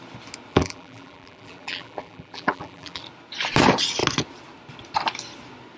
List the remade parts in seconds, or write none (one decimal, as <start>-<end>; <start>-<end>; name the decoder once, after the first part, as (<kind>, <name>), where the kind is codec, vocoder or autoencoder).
0.5-3.0 (vocoder, BigVGAN v2)